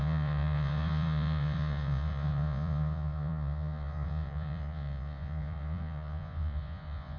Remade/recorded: remade